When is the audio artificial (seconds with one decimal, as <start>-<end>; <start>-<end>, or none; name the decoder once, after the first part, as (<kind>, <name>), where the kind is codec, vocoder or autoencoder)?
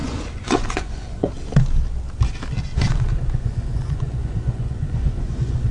0.0-1.3 (vocoder, Vocos); 2.7-5.7